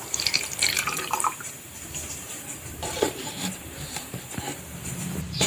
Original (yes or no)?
no